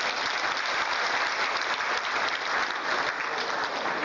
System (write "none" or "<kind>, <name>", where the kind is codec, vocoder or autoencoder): none